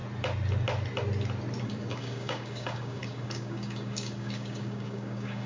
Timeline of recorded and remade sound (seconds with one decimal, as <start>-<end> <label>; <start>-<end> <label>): 0.0-1.6 recorded; 1.6-5.5 remade